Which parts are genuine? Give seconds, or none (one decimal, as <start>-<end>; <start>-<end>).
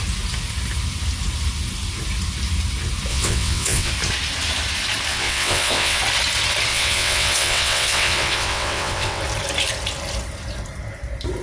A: 0.0-3.1; 3.9-5.1; 6.0-6.7; 9.2-11.4